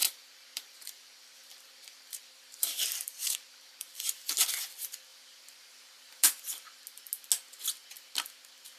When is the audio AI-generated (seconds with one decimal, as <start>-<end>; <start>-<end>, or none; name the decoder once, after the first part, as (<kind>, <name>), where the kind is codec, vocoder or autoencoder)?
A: 0.0-4.3 (vocoder, BigVGAN v2); 5.1-6.8